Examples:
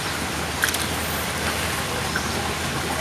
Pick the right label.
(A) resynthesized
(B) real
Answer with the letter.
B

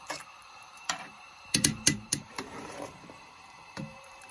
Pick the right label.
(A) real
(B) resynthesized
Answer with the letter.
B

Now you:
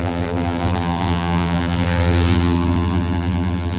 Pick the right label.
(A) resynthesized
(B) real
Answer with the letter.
A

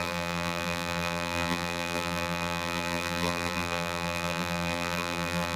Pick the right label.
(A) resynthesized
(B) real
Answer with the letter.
A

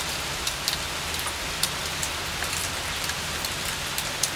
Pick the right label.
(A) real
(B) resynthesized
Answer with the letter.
A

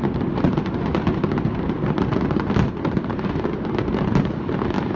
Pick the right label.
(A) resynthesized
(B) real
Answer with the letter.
B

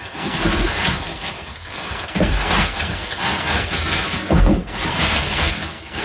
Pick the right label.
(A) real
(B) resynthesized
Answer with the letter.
B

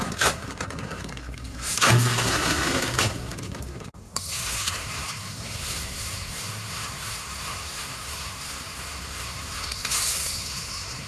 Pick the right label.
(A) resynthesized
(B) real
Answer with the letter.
A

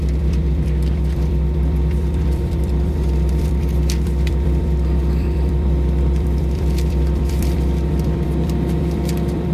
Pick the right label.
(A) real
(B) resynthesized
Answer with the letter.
B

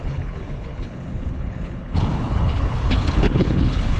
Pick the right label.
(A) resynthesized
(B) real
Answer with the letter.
A